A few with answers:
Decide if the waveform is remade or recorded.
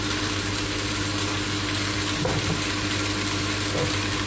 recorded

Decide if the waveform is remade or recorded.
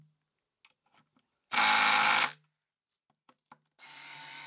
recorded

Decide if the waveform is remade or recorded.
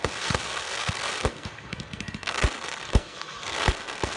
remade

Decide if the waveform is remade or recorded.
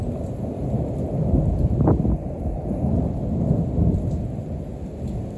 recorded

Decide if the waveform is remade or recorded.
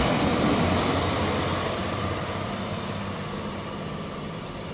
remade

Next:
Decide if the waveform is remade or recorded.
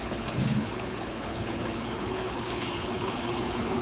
remade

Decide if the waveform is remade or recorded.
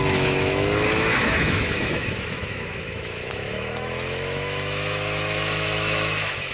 remade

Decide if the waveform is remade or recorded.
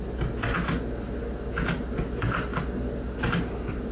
recorded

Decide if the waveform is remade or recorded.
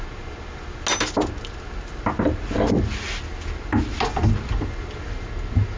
recorded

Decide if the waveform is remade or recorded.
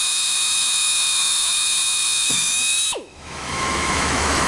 remade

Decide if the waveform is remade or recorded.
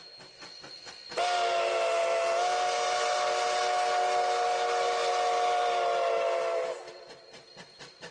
recorded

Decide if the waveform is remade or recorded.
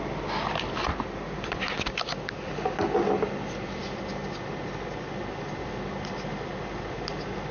recorded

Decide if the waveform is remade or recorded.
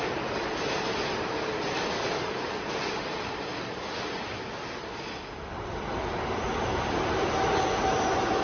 recorded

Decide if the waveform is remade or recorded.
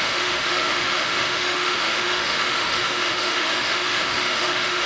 remade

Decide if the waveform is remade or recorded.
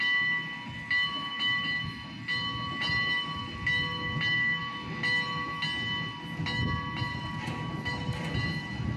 recorded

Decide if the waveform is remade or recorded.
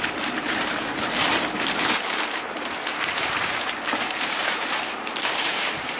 remade